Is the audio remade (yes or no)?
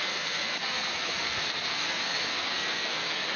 yes